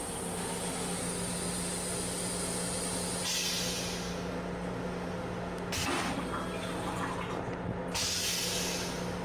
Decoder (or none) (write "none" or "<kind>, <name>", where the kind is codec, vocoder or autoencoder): none